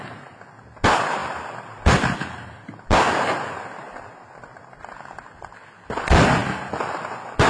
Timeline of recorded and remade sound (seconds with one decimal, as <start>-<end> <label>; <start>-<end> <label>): 0.0-7.5 recorded